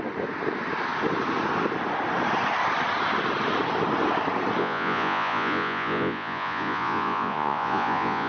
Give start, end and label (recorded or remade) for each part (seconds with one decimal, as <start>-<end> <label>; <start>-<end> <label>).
0.0-4.6 recorded; 4.6-8.3 remade